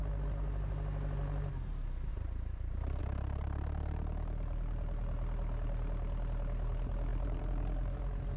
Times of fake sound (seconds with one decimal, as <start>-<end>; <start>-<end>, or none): 2.1-3.0; 7.1-8.0